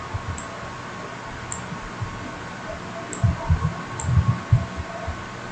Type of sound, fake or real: real